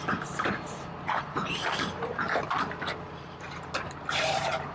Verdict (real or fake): fake